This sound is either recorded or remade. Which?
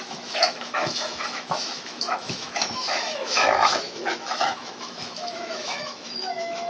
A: remade